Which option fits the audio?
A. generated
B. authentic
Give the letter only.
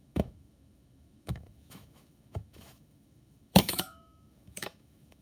A